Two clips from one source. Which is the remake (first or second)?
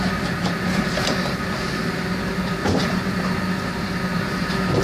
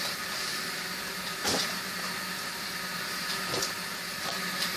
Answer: second